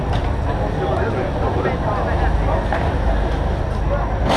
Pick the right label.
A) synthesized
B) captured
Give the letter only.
B